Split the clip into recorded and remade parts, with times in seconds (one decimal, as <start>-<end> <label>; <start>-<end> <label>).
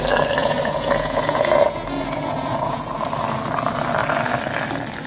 0.0-0.4 recorded; 0.4-2.9 remade; 2.9-5.1 recorded